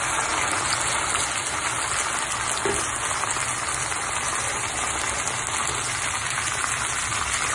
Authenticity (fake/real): real